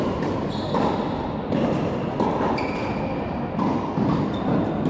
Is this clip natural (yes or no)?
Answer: yes